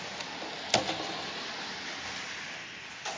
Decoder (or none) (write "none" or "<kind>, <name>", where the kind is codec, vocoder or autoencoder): none